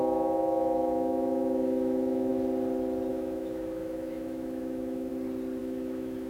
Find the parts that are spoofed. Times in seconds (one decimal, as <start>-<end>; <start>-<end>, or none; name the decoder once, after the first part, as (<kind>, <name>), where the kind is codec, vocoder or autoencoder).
0.0-2.3 (autoencoder, DAC-VAE); 3.1-5.1; 5.6-6.3